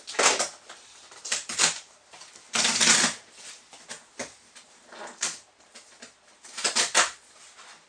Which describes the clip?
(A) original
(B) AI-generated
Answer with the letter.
A